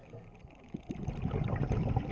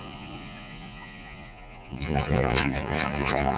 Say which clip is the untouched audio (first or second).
first